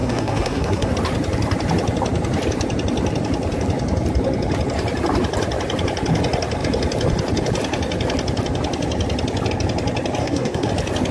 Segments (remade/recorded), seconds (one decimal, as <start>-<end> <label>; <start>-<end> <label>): 0.0-0.9 remade; 0.9-10.2 recorded; 10.2-10.7 remade; 10.7-11.1 recorded

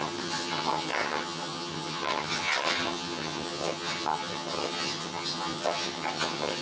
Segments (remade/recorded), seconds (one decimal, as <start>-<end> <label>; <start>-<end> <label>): 0.0-6.6 remade

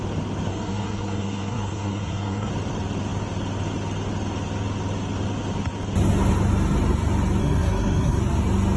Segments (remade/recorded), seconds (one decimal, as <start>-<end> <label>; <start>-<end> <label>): 0.0-0.5 recorded; 0.5-2.5 remade; 2.5-7.4 recorded; 7.4-8.2 remade; 8.2-8.8 recorded

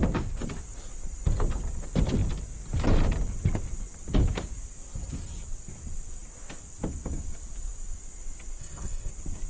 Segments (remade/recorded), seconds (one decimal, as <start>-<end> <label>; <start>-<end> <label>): 0.0-8.6 recorded; 8.6-9.1 remade; 9.1-9.5 recorded